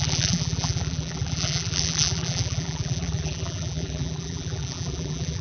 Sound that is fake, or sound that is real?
fake